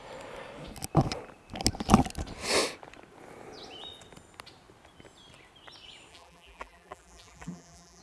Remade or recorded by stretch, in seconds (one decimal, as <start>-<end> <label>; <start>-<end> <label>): 0.0-6.1 recorded; 6.1-8.0 remade